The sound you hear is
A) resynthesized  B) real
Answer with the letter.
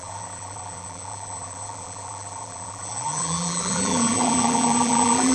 A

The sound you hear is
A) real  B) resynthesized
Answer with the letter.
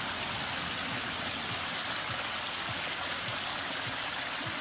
A